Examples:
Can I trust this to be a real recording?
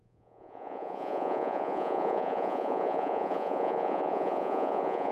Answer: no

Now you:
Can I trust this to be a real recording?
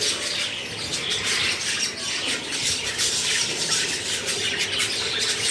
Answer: yes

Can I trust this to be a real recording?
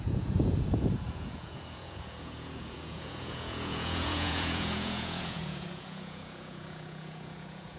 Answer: no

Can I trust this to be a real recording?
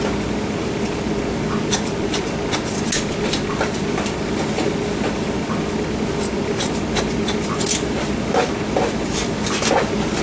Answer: yes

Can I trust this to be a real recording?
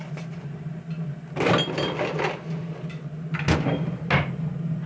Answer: yes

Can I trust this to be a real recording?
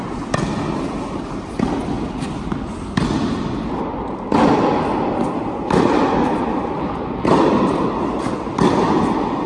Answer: yes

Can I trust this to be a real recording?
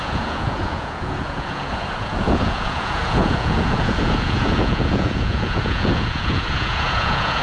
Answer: no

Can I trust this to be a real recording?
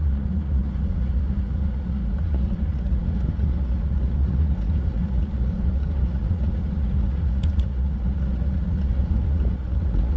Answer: no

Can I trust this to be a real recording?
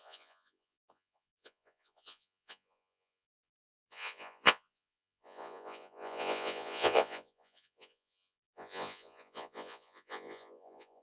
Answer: no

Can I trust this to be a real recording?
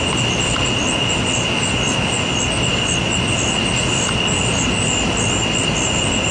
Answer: yes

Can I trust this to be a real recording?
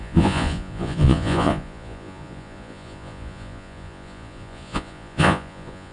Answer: no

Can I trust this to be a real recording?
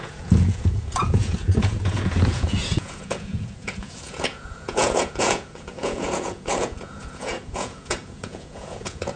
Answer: no